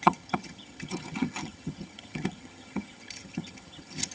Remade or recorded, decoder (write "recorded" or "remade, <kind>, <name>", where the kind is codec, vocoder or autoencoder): remade, vocoder, HiFi-GAN